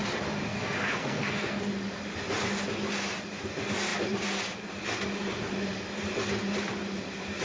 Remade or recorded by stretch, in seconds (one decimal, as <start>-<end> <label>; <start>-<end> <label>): 0.0-0.5 recorded; 0.5-1.6 remade; 1.6-7.4 recorded